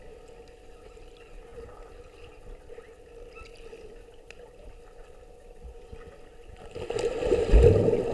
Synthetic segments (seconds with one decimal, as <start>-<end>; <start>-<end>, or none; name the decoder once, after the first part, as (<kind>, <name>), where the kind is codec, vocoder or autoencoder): none